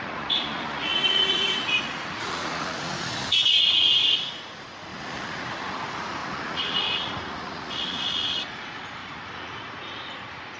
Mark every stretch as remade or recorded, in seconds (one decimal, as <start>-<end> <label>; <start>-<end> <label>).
0.0-10.6 remade